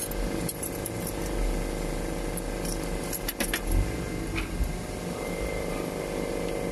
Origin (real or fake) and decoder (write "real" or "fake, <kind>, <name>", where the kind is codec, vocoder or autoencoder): real